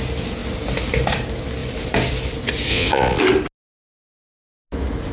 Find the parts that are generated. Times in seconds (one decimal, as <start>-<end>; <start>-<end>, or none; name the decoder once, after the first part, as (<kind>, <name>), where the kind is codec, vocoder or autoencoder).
2.7-3.2 (vocoder, Vocos)